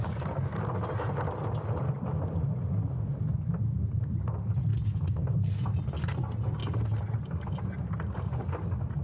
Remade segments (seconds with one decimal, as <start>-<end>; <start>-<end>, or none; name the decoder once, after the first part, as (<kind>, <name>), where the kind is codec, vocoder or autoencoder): none